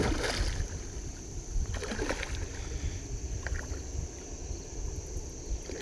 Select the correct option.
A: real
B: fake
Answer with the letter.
A